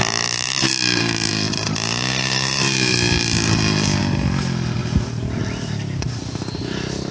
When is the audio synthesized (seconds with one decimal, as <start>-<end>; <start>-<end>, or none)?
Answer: 0.0-1.3